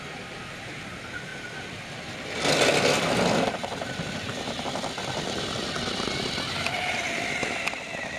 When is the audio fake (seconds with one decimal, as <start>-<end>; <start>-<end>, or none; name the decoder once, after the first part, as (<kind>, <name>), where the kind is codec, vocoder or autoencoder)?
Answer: none